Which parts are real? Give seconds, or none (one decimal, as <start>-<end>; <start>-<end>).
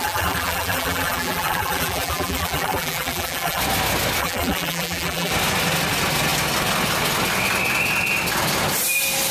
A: 3.6-4.2; 5.3-9.3